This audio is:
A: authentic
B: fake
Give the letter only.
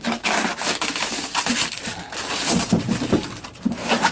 B